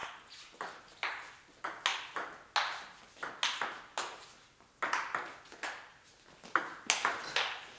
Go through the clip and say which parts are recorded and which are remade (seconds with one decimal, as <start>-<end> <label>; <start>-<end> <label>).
0.0-7.8 recorded